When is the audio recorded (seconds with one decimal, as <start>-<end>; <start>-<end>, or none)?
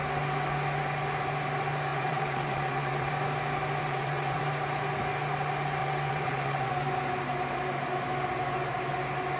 0.0-1.9; 3.1-3.8; 4.4-5.8; 6.7-9.4